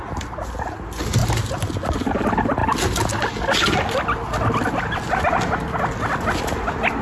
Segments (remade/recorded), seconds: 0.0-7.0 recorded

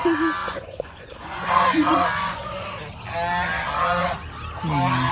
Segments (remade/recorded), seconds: 0.0-0.4 recorded; 0.4-2.4 remade; 2.4-5.1 recorded